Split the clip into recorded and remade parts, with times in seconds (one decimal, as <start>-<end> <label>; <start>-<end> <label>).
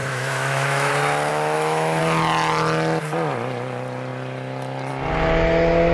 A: 0.0-0.9 remade; 0.9-1.3 recorded; 1.3-2.0 remade; 2.0-5.9 recorded